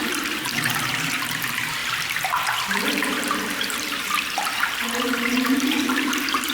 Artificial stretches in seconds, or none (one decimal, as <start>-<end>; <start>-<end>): 0.0-1.8; 2.9-6.5

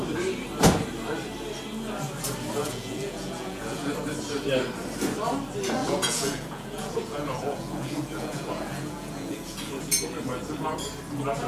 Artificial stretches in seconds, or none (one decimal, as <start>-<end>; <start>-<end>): 2.6-3.9; 5.8-9.7

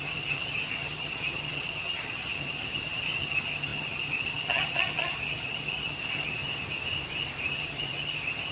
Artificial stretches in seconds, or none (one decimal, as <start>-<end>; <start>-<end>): 0.0-6.4; 7.5-8.5

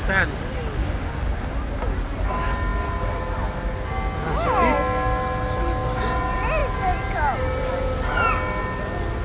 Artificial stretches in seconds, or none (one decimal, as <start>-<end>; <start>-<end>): 0.8-1.4

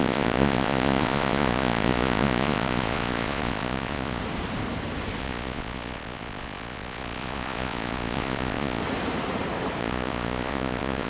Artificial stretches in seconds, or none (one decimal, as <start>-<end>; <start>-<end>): 0.0-4.2; 5.2-8.8; 9.8-11.1

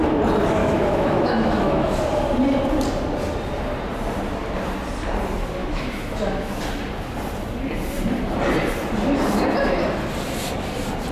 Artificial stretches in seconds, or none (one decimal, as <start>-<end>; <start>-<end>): 0.6-2.0; 5.6-6.6

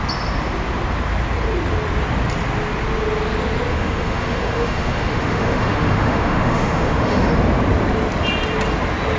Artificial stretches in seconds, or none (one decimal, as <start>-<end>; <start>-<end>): 3.7-7.3

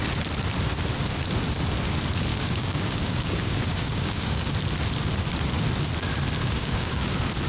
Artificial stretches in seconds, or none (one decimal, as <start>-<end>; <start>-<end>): 2.3-4.5; 6.4-7.1